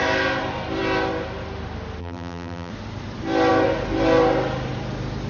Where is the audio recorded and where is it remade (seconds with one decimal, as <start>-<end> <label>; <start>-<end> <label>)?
0.0-2.0 recorded; 2.0-2.7 remade; 2.7-5.3 recorded

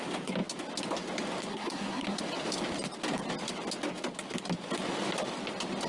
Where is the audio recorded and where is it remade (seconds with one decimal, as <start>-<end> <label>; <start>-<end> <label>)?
0.0-1.5 recorded; 1.5-2.2 remade; 2.2-5.9 recorded

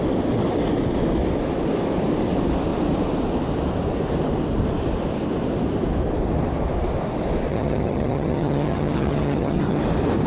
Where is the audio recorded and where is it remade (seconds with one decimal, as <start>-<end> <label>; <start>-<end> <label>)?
0.0-7.5 recorded; 7.5-9.8 remade; 9.8-10.3 recorded

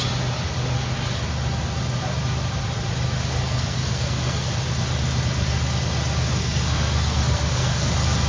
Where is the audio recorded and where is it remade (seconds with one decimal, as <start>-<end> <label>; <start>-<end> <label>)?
0.0-3.4 recorded; 3.4-4.5 remade; 4.5-6.4 recorded; 6.4-7.9 remade; 7.9-8.3 recorded

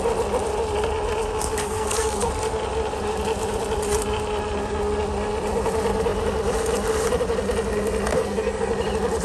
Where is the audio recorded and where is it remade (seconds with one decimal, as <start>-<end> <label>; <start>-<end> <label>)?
0.0-1.6 recorded; 1.6-2.3 remade; 2.3-8.1 recorded; 8.1-8.7 remade; 8.7-9.2 recorded

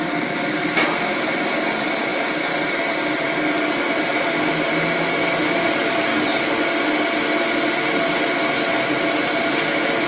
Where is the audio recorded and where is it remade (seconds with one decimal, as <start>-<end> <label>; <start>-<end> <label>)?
0.0-10.1 recorded